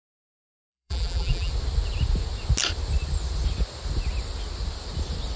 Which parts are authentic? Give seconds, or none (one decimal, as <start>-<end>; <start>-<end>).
0.0-0.7; 1.5-5.4